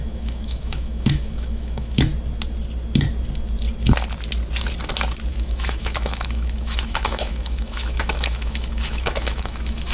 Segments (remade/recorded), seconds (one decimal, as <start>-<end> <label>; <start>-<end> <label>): 0.0-2.1 remade; 2.1-5.3 recorded; 5.3-9.9 remade